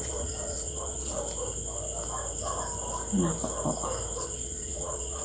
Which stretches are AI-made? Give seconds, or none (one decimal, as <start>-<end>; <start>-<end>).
0.0-1.1; 4.2-5.2